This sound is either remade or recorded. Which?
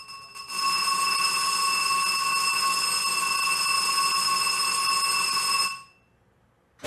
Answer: recorded